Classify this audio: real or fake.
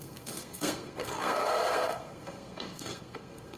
fake